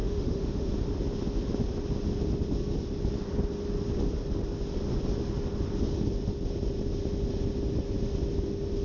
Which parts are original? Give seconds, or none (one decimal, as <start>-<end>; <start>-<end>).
0.7-8.8